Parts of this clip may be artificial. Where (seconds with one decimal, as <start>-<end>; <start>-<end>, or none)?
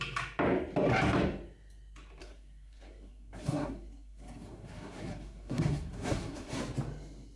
2.2-6.6